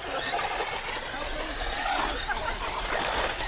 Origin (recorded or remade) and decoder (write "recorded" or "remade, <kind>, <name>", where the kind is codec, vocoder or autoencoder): recorded